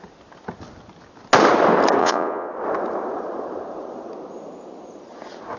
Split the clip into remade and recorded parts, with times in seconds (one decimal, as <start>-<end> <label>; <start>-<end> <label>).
0.0-2.0 recorded; 2.0-2.5 remade; 2.5-5.6 recorded